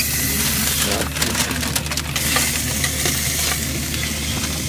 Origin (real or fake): real